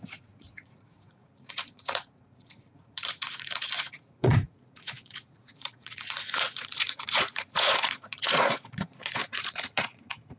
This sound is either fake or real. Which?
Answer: fake